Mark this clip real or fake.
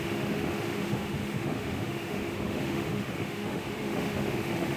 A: fake